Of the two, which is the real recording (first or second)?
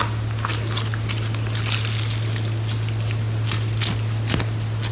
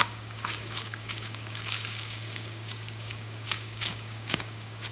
first